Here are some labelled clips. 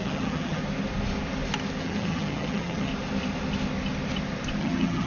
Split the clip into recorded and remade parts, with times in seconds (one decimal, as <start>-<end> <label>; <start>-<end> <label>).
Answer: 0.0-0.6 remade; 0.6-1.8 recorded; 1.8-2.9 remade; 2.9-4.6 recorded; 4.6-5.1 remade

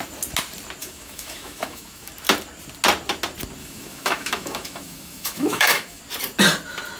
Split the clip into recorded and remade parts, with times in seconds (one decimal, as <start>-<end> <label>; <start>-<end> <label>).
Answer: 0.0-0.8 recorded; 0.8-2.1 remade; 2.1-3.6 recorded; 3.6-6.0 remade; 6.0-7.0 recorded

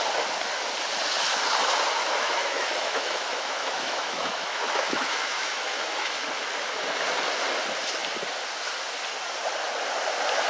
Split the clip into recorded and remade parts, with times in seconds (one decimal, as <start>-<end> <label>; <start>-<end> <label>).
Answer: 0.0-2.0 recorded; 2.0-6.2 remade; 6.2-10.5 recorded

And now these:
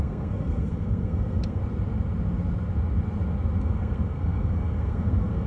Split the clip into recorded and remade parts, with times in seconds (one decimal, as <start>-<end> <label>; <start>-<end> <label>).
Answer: 0.0-1.6 remade; 1.6-3.6 recorded; 3.6-5.5 remade

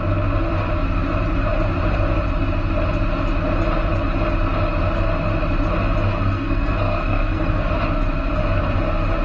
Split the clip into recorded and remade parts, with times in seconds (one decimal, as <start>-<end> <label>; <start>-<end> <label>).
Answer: 0.0-6.1 recorded; 6.1-7.7 remade; 7.7-9.2 recorded

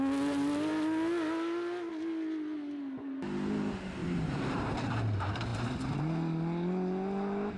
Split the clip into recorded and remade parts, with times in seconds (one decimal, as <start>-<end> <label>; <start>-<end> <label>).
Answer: 0.0-4.0 recorded; 4.0-4.9 remade; 4.9-7.6 recorded

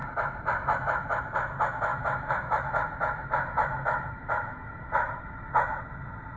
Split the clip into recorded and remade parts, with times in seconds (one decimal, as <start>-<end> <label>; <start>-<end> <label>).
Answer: 0.0-1.9 recorded; 1.9-5.5 remade; 5.5-6.4 recorded

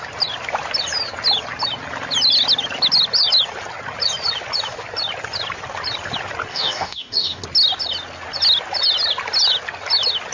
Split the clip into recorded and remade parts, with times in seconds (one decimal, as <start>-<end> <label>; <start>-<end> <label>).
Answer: 0.0-6.5 recorded; 6.5-7.4 remade; 7.4-10.3 recorded